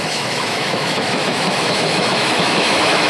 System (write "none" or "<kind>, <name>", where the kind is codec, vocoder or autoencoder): autoencoder, DAC-VAE